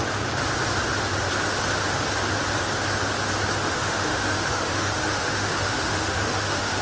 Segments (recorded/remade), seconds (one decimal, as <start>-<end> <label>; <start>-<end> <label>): 0.0-3.6 recorded; 3.6-6.8 remade

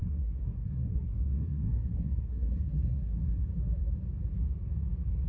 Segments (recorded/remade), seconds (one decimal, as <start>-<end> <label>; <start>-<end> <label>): 0.0-3.2 remade; 3.2-5.3 recorded

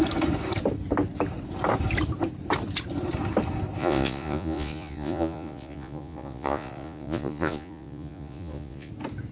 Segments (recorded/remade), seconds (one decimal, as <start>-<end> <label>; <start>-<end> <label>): 0.0-3.8 recorded; 3.8-8.9 remade; 8.9-9.3 recorded

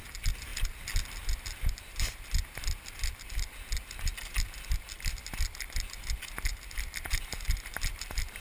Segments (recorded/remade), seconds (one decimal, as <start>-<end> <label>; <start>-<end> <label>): 0.0-8.4 recorded

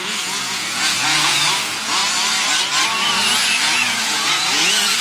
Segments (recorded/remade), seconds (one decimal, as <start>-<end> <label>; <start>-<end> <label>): 0.0-2.0 remade; 2.0-3.4 recorded; 3.4-5.0 remade